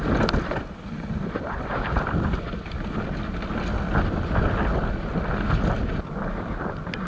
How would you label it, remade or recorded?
recorded